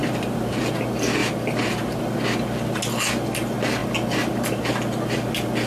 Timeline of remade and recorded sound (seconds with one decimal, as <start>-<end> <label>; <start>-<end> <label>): 0.0-0.6 remade; 0.6-1.2 recorded; 1.2-2.0 remade; 2.0-5.7 recorded